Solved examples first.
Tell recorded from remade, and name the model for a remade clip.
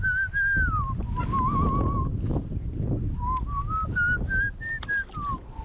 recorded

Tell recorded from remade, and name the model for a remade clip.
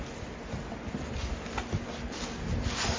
recorded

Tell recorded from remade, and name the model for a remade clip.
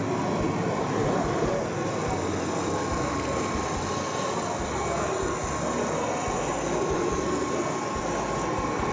recorded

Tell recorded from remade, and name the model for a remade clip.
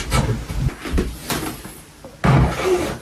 recorded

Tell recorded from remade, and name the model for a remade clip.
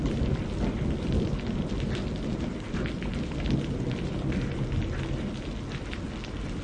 recorded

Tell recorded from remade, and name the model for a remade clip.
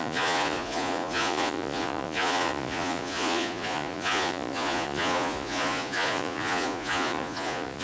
remade, vocoder, Vocos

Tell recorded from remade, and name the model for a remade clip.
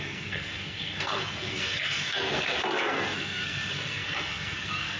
remade, codec, SNAC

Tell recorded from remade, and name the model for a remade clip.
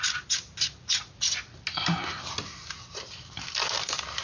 recorded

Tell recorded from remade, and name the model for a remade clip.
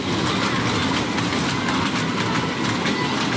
recorded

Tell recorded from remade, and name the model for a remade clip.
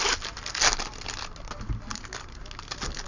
recorded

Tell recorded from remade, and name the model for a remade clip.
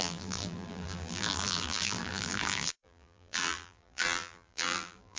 remade, vocoder, BigVGAN v2